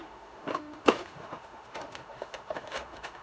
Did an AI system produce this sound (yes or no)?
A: yes